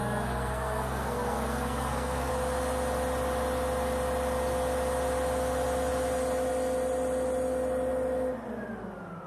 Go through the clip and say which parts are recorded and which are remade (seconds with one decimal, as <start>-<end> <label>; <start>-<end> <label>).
0.0-2.3 remade; 2.3-9.3 recorded